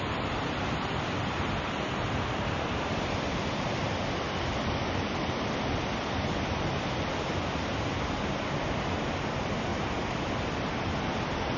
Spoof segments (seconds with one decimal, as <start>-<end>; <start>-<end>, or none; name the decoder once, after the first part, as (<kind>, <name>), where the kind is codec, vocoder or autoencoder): none